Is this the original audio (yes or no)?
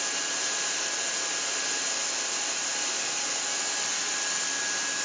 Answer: yes